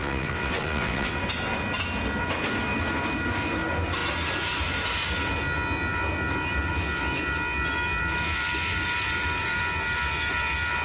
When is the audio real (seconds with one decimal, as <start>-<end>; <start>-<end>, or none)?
1.2-10.8